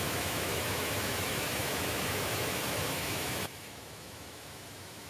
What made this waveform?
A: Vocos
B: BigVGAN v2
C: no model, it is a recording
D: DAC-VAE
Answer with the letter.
D